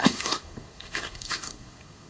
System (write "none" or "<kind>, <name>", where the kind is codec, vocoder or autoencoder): codec, SNAC